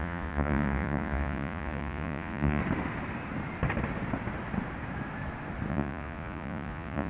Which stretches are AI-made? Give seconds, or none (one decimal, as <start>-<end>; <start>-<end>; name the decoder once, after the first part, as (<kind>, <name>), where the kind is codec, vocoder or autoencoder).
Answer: 0.0-2.6 (vocoder, Vocos); 5.7-7.1